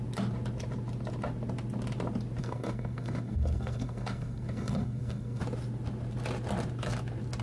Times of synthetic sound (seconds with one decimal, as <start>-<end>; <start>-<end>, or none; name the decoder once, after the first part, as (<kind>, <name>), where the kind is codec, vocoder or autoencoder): 2.4-5.4 (codec, SNAC)